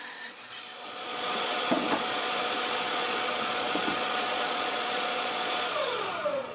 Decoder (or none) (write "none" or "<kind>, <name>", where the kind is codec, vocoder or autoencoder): vocoder, Vocos